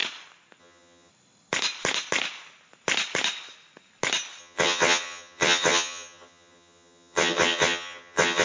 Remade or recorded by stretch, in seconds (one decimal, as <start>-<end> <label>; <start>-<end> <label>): 0.0-0.6 recorded; 0.6-1.1 remade; 1.1-4.4 recorded; 4.4-8.4 remade